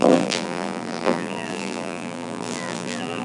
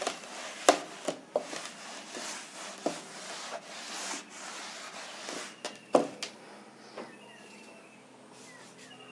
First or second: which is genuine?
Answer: second